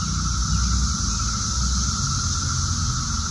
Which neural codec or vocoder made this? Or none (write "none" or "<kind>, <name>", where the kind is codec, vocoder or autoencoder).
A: none